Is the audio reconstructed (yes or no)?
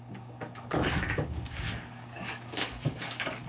yes